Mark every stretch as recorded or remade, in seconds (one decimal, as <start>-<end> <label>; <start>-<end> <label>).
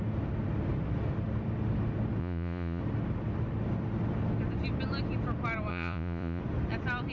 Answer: 0.0-2.2 recorded; 2.2-2.8 remade; 2.8-5.7 recorded; 5.7-6.4 remade; 6.4-7.1 recorded